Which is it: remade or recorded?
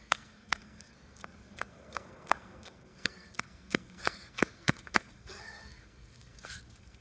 remade